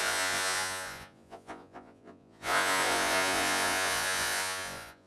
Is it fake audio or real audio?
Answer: fake